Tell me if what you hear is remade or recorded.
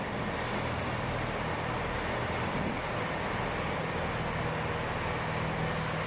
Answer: recorded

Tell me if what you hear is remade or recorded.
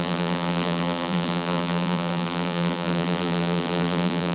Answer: remade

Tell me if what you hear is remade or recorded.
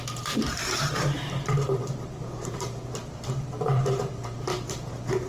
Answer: remade